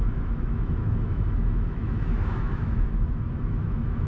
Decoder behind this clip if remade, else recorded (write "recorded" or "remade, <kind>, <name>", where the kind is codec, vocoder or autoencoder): remade, autoencoder, DAC-VAE